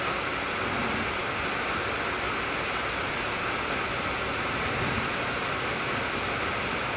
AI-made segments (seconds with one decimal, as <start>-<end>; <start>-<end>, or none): none